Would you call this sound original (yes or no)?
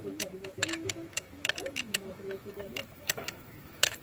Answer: no